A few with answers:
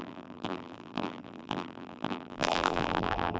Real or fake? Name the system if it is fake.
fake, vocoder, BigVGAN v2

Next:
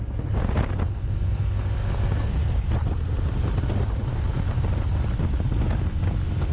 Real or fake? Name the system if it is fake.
real